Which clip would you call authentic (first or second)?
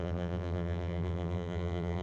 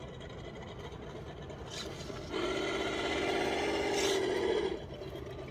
second